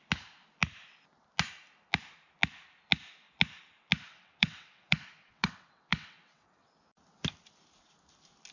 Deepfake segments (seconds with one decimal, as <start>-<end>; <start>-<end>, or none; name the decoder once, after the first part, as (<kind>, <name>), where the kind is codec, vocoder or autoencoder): 4.1-6.7 (vocoder, WaveNeXt)